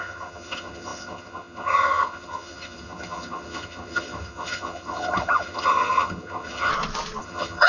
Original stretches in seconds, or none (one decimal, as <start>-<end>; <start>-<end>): 6.7-7.2